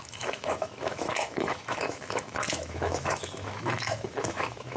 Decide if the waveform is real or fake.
fake